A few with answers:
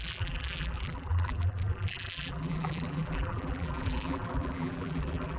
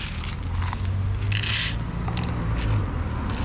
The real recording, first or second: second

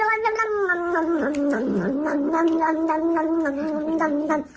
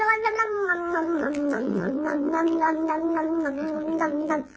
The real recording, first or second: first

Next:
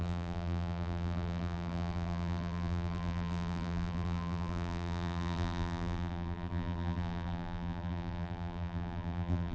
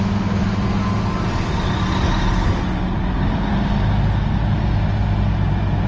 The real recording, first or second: second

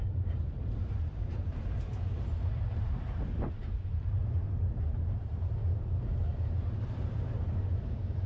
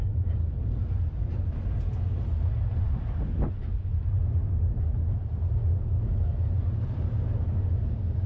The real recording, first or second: second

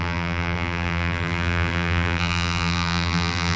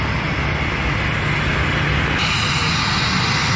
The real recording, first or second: second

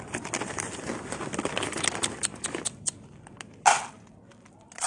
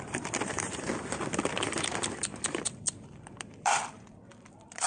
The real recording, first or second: first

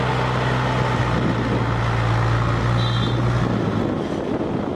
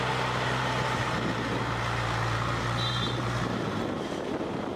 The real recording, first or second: first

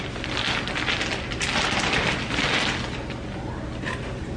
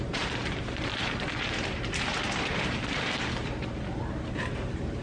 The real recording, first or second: first